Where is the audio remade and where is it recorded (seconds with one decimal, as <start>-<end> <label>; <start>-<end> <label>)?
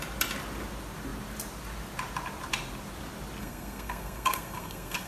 0.0-3.4 recorded; 3.4-5.1 remade